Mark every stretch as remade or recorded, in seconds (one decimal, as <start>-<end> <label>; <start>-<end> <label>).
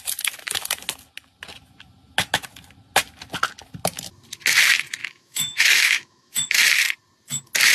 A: 0.0-5.0 recorded; 5.0-6.5 remade; 6.5-7.7 recorded